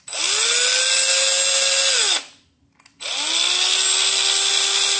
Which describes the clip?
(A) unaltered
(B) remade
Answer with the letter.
A